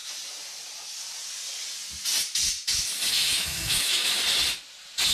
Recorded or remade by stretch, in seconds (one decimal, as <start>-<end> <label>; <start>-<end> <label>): 0.0-3.1 recorded; 3.1-4.1 remade; 4.1-5.1 recorded